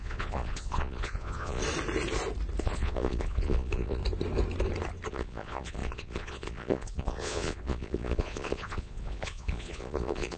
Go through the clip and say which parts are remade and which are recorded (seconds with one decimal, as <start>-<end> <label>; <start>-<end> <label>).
0.0-1.6 remade; 1.6-2.6 recorded; 2.6-4.0 remade; 4.0-5.1 recorded; 5.1-10.4 remade